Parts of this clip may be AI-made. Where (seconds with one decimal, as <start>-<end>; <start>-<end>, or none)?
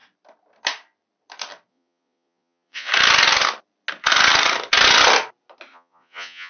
1.7-2.9; 5.7-6.5